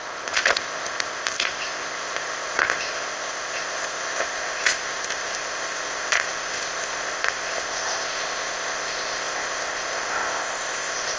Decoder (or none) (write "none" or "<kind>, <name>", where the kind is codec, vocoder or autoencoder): codec, ZipCodec